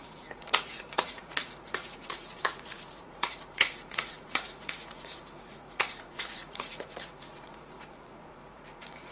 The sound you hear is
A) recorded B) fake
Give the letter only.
B